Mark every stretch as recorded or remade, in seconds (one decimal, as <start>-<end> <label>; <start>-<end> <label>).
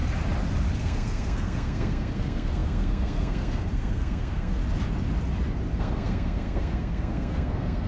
0.0-0.8 recorded; 0.8-4.6 remade; 4.6-5.8 recorded; 5.8-7.9 remade